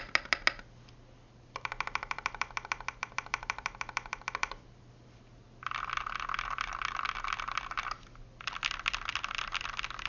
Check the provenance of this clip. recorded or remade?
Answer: recorded